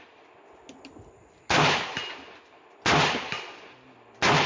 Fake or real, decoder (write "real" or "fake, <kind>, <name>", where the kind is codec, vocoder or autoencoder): real